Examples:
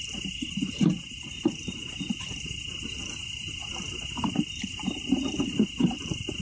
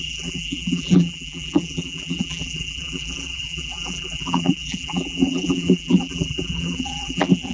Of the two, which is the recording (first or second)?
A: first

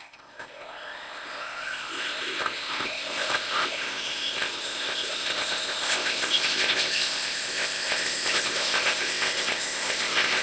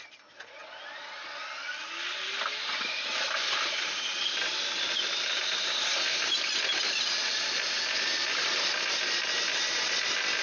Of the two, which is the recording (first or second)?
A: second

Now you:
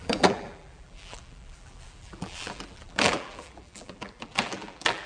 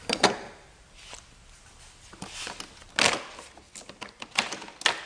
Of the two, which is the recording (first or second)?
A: second